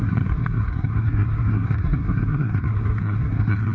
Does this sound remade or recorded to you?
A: remade